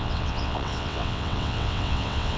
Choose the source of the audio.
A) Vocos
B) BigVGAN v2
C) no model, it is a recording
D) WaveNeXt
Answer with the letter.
D